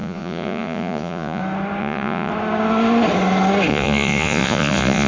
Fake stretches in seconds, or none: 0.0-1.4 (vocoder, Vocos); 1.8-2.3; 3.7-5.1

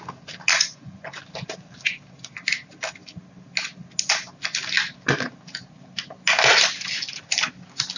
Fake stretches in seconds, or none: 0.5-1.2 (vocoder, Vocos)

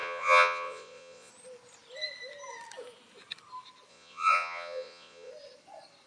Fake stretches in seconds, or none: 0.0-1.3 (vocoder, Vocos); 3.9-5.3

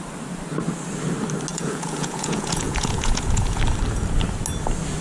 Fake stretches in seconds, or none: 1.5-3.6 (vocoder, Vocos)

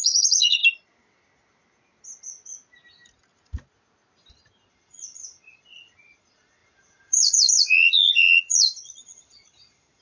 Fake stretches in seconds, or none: 0.0-0.6 (vocoder, Vocos); 4.7-10.0